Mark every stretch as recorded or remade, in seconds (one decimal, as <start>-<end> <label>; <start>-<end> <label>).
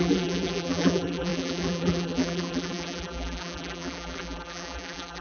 0.0-5.2 remade